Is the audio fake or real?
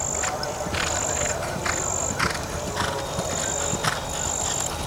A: real